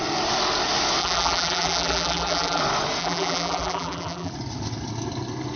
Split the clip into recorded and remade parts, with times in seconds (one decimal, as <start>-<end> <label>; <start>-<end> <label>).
0.0-1.0 recorded; 1.0-2.6 remade; 2.6-3.0 recorded; 3.0-4.3 remade; 4.3-5.6 recorded